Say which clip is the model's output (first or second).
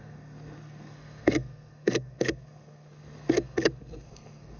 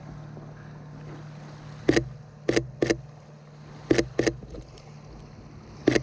first